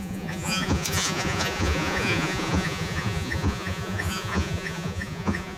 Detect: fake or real fake